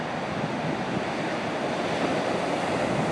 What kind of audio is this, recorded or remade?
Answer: recorded